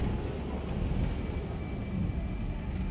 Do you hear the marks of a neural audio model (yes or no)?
no